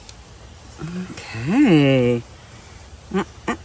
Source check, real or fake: real